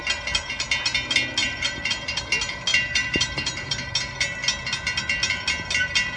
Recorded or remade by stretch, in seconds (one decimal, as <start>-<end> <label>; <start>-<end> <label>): 0.0-1.4 recorded; 1.4-2.2 remade; 2.2-2.7 recorded; 2.7-3.9 remade; 3.9-6.2 recorded